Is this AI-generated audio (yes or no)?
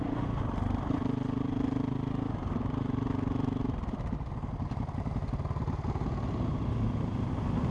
no